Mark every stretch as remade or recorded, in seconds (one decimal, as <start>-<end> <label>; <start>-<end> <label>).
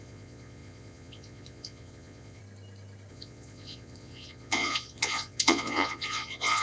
0.0-2.4 remade; 2.4-3.1 recorded; 3.1-6.6 remade